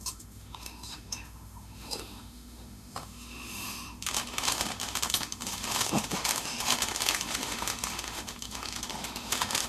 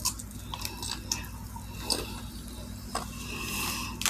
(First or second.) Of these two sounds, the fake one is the first